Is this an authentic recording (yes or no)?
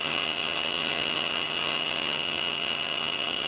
no